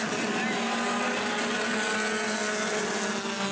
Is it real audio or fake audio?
real